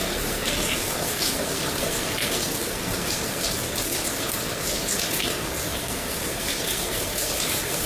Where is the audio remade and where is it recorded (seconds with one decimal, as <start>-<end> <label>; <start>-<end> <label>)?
0.0-7.9 remade